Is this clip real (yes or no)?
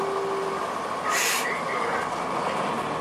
yes